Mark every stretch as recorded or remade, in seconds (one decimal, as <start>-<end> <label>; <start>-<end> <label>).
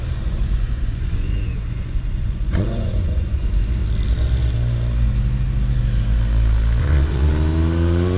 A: 0.0-3.8 remade; 3.8-6.8 recorded; 6.8-7.3 remade; 7.3-8.2 recorded